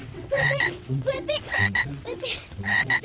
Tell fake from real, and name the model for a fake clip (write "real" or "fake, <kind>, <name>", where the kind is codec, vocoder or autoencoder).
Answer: fake, vocoder, WaveNeXt